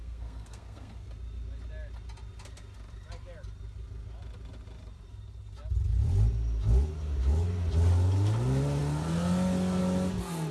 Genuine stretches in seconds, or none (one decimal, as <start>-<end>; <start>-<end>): 1.1-10.5